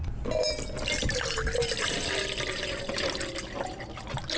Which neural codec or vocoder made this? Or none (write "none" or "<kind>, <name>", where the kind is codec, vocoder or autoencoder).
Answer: none